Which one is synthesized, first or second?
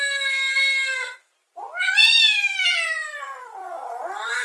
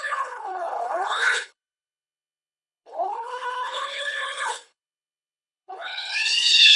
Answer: second